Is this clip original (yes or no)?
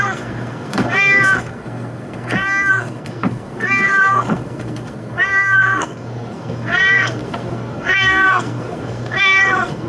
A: no